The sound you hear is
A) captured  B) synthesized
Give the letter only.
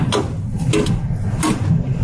A